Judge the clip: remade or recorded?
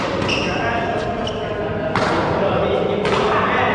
recorded